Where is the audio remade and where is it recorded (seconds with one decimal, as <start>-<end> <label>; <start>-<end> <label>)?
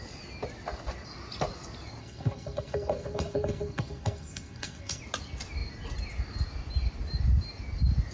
0.0-2.0 recorded; 2.0-5.0 remade; 5.0-8.1 recorded